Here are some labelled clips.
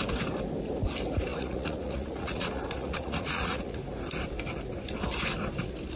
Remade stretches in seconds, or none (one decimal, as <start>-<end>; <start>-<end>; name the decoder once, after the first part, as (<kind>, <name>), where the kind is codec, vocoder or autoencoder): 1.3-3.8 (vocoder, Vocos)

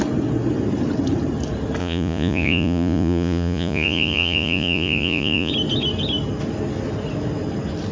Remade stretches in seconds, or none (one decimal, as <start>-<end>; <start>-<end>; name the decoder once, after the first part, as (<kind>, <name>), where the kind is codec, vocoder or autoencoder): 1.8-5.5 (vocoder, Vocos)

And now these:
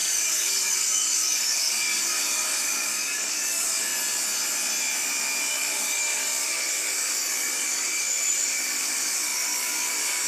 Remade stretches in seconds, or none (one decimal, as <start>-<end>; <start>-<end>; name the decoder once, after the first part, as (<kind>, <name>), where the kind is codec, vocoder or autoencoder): 0.0-3.9 (codec, DAC); 5.5-10.3

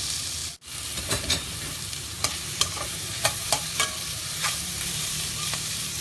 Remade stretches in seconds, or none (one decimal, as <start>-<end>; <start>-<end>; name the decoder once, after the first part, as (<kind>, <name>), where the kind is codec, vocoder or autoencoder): 0.0-0.4 (vocoder, BigVGAN v2); 1.0-6.0

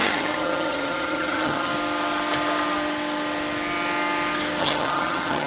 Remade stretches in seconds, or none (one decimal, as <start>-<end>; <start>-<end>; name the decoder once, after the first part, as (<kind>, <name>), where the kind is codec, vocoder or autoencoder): 0.0-1.7 (vocoder, HiFi-GAN); 4.6-5.5